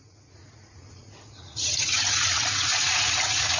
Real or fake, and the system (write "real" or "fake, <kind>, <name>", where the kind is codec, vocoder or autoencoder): fake, vocoder, Vocos